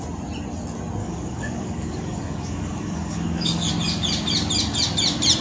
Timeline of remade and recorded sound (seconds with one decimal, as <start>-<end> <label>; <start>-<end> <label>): 0.0-1.0 recorded; 1.0-3.7 remade; 3.7-5.4 recorded